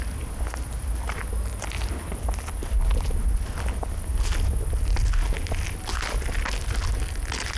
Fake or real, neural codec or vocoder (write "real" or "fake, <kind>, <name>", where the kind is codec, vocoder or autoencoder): real